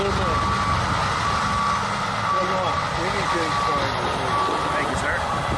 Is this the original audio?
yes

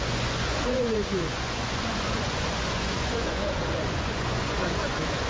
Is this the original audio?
no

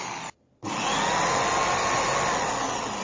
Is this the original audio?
yes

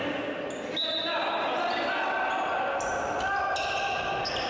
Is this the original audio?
yes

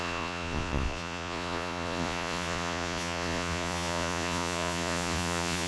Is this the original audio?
no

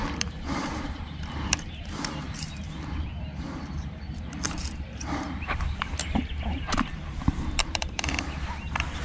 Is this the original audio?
no